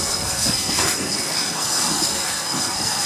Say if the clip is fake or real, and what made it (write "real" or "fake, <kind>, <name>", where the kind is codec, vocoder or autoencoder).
fake, codec, SNAC